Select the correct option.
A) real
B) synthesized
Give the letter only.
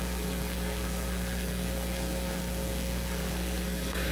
B